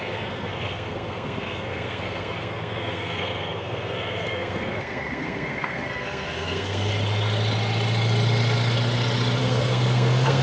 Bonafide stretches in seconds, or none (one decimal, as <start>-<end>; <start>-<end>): 6.9-9.4

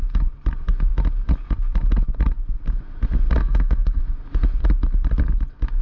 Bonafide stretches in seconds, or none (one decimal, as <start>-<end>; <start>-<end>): 0.0-3.4; 4.0-5.8

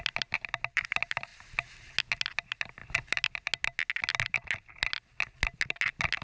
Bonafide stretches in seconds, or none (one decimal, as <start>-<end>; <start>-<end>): 0.0-6.2

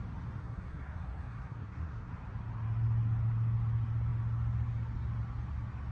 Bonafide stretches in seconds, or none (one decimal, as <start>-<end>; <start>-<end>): 0.0-0.4; 2.1-5.9

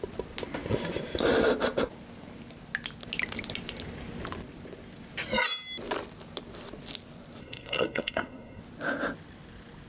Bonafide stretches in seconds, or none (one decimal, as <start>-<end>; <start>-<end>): 0.0-7.4; 8.6-9.9

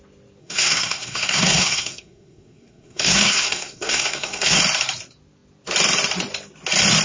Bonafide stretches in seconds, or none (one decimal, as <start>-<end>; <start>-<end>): 0.0-0.4; 4.6-7.0